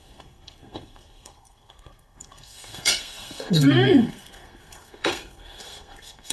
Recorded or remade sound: remade